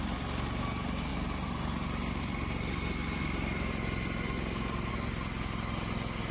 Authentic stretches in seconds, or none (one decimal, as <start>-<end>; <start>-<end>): 0.0-6.3